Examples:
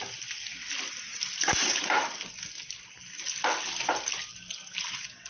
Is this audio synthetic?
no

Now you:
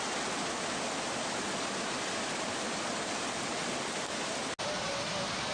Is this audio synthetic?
no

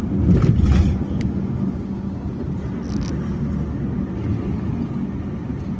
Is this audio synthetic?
no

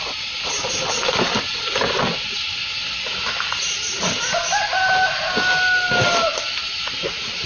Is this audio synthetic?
no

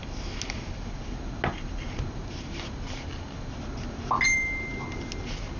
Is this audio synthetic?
no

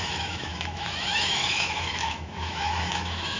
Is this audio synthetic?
yes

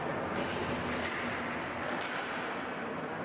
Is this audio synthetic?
no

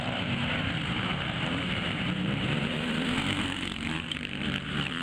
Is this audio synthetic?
yes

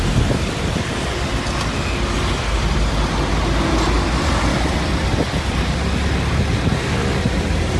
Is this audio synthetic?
no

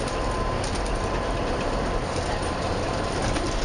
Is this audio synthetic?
no